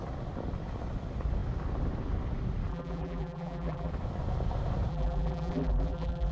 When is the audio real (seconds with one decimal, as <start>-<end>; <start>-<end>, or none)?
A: 0.0-2.7; 3.9-4.9